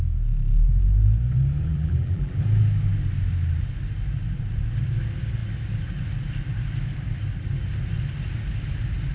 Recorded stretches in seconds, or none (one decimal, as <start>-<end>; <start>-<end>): 0.0-1.7; 2.4-9.1